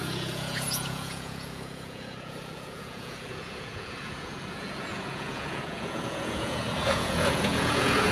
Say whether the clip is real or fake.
fake